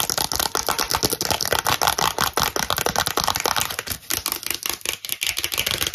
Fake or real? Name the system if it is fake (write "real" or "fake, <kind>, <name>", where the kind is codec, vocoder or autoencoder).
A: real